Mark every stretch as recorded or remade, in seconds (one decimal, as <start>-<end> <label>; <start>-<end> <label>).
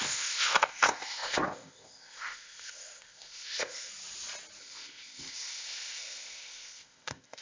0.0-3.9 remade; 3.9-4.6 recorded; 4.6-7.4 remade